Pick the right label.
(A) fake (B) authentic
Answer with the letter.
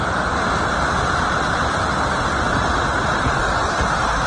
B